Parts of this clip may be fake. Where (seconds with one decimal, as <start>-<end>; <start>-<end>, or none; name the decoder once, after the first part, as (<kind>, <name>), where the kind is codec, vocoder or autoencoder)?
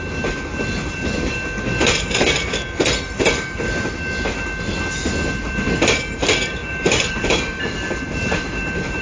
none